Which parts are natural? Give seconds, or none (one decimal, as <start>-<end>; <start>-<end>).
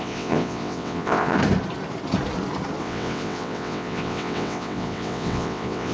1.4-2.8